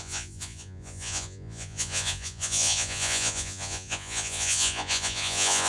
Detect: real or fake fake